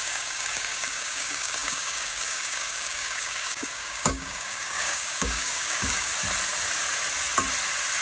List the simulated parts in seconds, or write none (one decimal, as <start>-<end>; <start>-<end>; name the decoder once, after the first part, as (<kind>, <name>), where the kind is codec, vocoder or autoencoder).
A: 0.0-6.1 (codec, DAC)